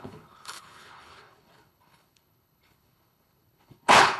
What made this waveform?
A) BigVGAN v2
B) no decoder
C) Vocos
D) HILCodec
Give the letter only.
D